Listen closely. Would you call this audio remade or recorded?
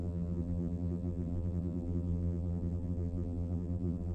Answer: remade